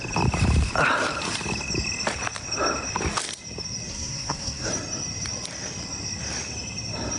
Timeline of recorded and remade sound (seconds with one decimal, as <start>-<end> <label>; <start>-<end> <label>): 0.0-3.9 recorded; 3.9-4.7 remade; 4.7-7.2 recorded